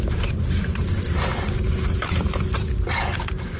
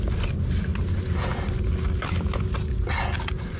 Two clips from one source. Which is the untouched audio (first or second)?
second